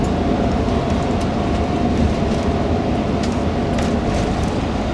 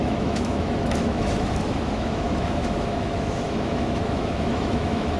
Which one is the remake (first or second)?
second